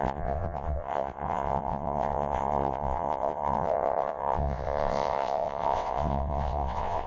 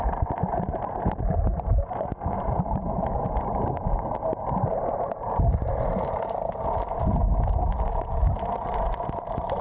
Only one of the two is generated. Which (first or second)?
first